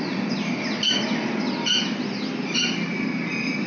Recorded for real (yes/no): yes